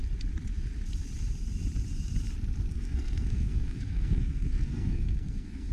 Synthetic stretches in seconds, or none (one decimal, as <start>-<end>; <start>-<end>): 2.7-5.7